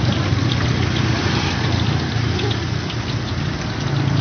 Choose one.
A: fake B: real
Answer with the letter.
B